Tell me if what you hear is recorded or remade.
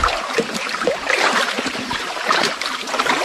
remade